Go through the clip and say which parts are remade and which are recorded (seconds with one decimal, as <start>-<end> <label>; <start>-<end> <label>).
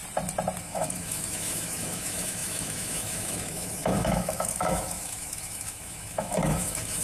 0.0-0.6 recorded; 0.6-7.0 remade